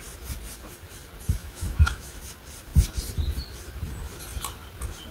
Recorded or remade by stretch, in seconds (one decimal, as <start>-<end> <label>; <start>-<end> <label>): 0.0-1.4 recorded; 1.4-2.2 remade; 2.2-5.1 recorded